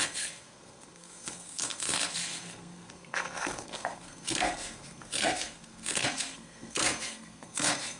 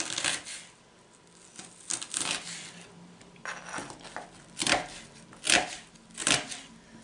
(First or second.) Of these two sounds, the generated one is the first